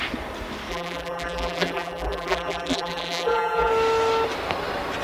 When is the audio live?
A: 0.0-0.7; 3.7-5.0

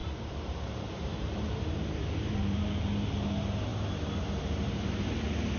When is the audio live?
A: 2.6-5.6

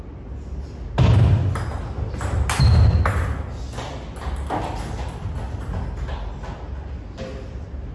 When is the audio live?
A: 0.0-7.9

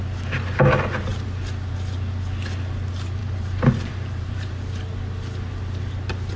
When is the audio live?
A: 0.0-3.2; 4.5-6.4

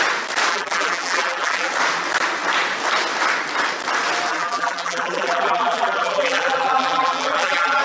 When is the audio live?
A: 0.0-0.5; 1.7-4.3

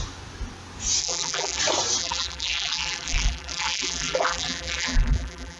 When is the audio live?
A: 0.0-1.0; 1.6-2.0